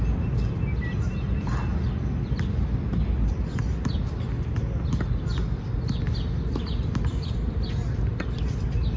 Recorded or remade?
recorded